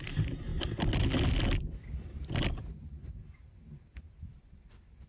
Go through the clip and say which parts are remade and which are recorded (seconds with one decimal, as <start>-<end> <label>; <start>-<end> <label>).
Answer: 0.0-5.1 recorded